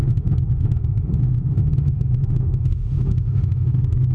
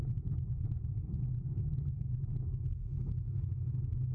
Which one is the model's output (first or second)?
first